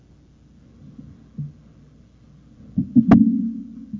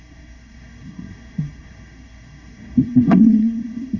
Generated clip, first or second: second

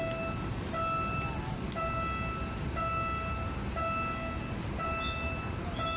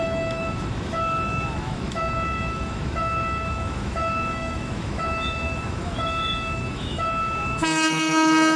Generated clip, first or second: second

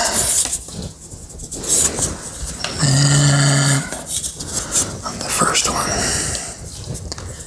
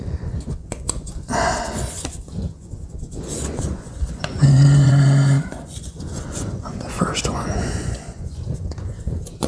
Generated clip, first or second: second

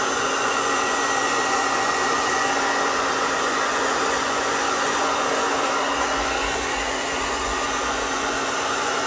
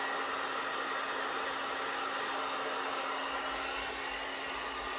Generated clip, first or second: first